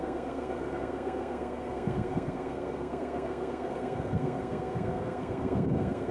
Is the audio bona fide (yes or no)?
no